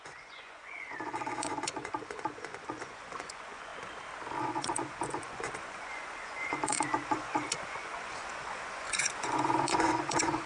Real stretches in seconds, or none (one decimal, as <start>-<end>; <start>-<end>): 3.7-4.4